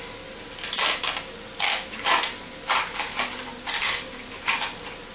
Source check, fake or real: real